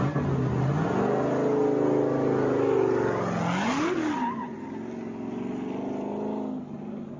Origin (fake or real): real